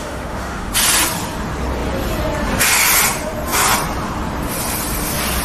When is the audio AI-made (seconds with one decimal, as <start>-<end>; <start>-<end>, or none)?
0.0-0.7